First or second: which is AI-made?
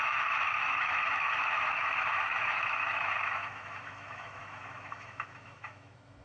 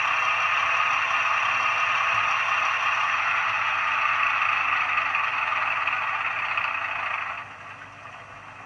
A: first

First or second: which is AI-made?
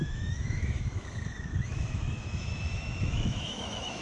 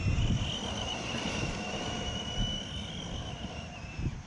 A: first